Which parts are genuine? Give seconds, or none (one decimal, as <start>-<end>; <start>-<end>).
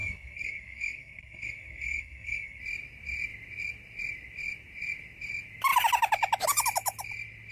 2.6-7.5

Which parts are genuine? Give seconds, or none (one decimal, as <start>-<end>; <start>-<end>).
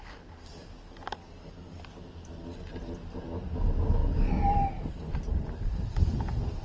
0.0-1.2; 1.8-6.6